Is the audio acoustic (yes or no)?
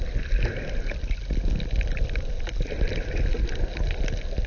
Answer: yes